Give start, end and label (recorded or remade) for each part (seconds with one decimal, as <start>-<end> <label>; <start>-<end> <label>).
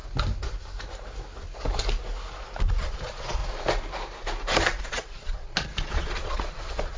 0.0-2.8 recorded; 2.8-3.4 remade; 3.4-4.8 recorded; 4.8-7.0 remade